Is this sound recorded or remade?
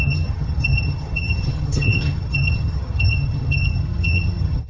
remade